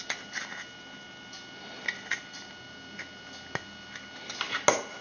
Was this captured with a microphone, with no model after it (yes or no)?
yes